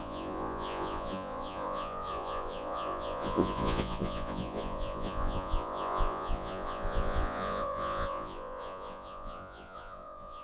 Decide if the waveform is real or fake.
fake